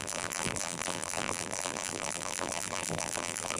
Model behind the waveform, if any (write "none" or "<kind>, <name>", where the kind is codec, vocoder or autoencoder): vocoder, BigVGAN v2